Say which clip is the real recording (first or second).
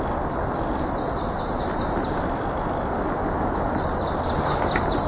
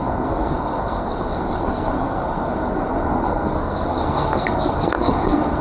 first